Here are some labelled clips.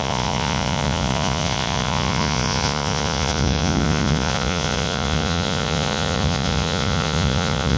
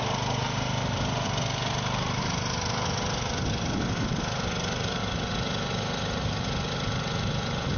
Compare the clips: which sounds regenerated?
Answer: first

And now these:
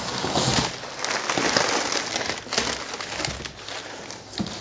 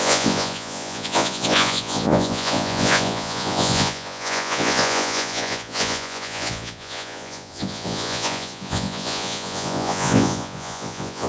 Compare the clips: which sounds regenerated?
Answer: second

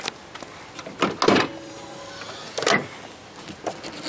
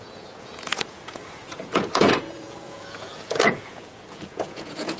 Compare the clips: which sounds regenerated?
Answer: second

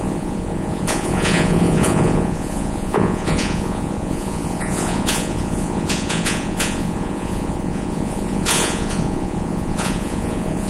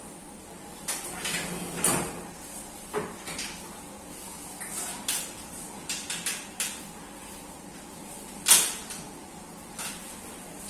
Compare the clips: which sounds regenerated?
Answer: first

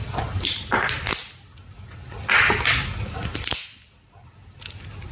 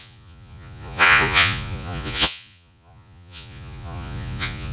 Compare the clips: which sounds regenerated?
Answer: second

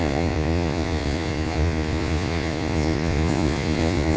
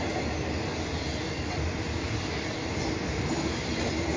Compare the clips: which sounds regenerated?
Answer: first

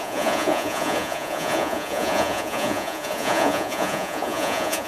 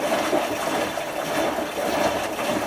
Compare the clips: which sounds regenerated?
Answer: first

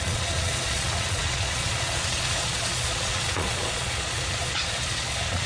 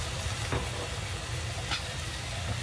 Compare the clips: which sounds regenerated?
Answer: first